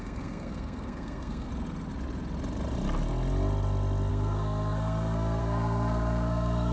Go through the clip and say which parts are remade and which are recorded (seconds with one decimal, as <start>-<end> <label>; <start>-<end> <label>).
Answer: 0.0-1.5 remade; 1.5-4.1 recorded; 4.1-6.7 remade